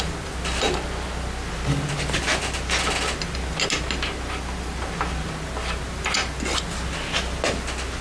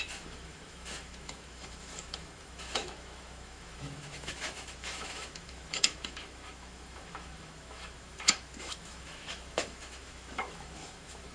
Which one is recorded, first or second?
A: first